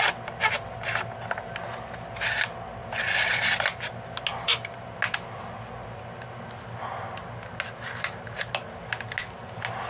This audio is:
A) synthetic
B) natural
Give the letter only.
B